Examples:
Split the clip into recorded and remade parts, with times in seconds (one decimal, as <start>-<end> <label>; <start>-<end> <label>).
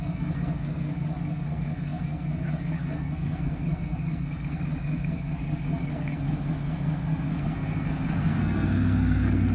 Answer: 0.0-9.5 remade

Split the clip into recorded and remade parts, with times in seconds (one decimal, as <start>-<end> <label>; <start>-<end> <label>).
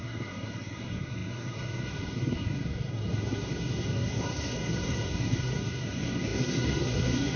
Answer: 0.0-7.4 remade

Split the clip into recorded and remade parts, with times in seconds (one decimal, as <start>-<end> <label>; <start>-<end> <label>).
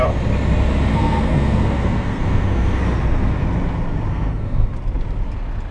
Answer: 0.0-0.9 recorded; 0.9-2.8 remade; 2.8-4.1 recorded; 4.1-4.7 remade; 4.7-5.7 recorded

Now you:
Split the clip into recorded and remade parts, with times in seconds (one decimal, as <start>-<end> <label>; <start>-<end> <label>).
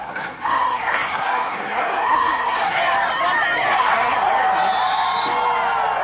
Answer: 0.0-2.8 remade; 2.8-3.8 recorded; 3.8-4.3 remade; 4.3-6.0 recorded